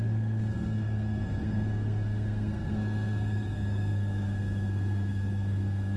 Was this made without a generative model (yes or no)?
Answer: no